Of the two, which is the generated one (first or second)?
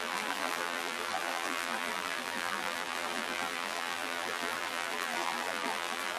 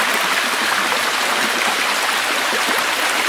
first